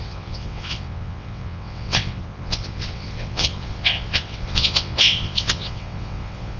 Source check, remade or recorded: remade